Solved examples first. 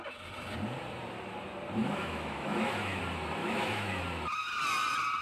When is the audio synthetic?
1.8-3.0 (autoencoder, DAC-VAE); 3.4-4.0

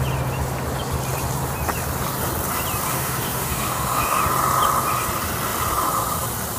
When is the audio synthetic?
2.9-4.2 (autoencoder, DAC-VAE)

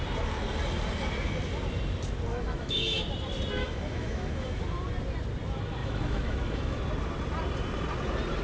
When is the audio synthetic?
2.3-3.0 (autoencoder, DAC-VAE); 3.6-4.6; 5.8-6.8

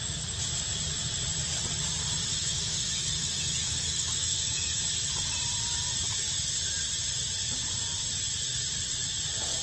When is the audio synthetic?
2.4-4.8 (autoencoder, DAC-VAE)

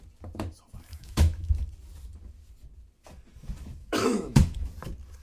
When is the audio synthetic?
0.9-1.5 (autoencoder, DAC-VAE); 3.8-4.7

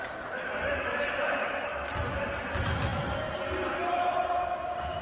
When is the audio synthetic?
0.7-1.9 (autoencoder, DAC-VAE)